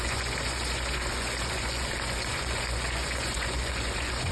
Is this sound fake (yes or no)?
yes